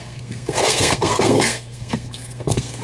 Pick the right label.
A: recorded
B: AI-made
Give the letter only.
B